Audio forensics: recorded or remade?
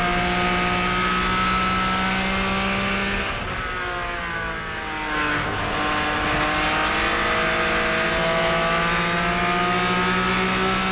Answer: recorded